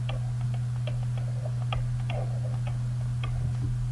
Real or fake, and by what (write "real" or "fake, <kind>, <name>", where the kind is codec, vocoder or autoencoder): real